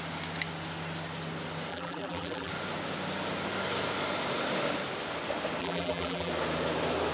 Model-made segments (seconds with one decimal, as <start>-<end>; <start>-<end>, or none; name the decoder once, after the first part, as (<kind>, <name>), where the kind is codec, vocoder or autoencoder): 1.7-2.5 (vocoder, BigVGAN v2); 5.6-6.3